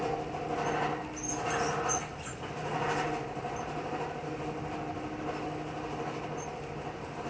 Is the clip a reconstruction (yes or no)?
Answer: no